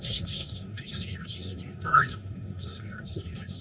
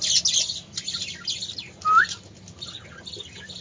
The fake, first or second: first